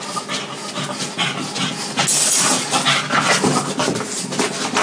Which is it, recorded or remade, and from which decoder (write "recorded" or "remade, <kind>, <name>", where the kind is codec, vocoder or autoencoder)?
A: recorded